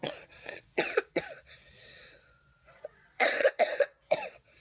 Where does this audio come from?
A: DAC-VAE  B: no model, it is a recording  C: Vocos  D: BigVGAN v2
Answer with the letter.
C